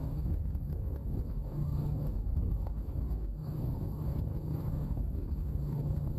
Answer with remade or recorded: remade